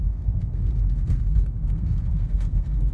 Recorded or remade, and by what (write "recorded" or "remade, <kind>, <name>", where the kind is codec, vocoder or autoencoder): remade, codec, SNAC